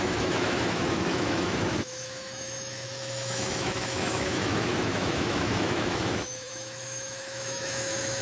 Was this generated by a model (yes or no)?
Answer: yes